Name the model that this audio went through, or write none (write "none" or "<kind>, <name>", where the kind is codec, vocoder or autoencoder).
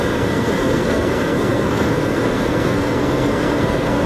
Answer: codec, SNAC